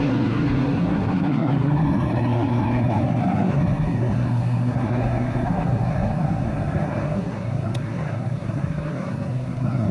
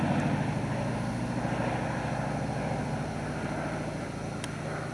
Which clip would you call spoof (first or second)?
first